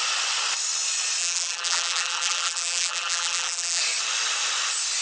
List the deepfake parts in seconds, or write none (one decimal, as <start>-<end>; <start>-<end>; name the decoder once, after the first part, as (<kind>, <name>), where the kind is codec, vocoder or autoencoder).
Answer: 1.2-3.8 (vocoder, BigVGAN v2)